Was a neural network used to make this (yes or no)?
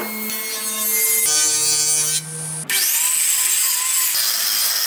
no